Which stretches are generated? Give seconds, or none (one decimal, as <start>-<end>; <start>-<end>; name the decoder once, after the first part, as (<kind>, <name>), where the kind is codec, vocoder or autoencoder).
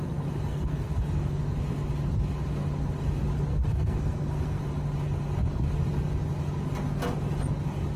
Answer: 0.5-1.4 (codec, SNAC); 3.5-4.6